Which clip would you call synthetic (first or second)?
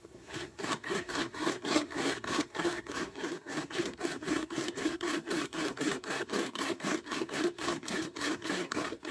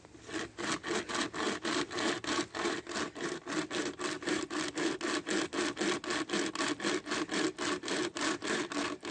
first